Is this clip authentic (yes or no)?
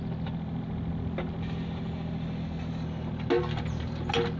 yes